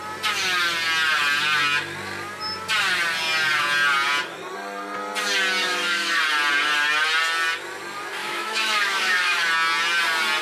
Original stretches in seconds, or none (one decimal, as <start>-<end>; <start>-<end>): 0.0-5.6; 6.2-8.2; 9.4-10.4